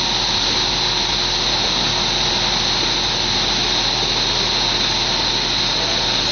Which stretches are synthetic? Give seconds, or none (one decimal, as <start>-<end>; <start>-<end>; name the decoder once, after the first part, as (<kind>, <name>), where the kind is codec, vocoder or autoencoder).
none